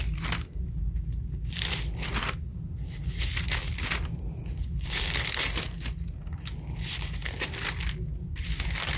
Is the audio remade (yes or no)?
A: no